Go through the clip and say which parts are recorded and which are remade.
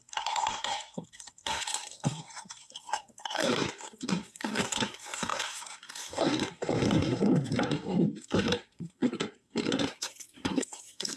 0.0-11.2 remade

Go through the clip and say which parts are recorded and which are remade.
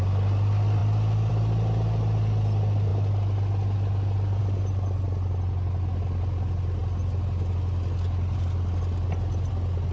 0.0-9.9 recorded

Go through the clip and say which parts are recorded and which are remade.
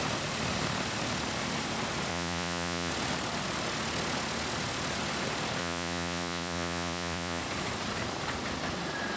0.0-2.1 recorded; 2.1-2.9 remade; 2.9-5.6 recorded; 5.6-7.4 remade; 7.4-9.2 recorded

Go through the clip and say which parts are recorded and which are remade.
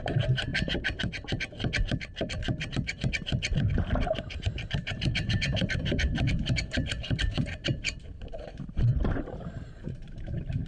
0.0-0.5 remade; 0.5-3.8 recorded; 3.8-10.7 remade